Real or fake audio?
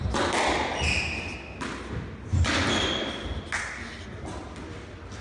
real